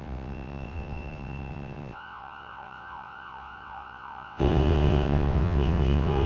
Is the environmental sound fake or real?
fake